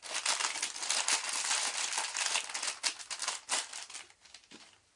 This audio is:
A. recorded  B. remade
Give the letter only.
A